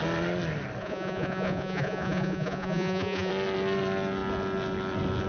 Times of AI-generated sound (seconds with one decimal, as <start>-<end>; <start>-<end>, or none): 0.8-3.3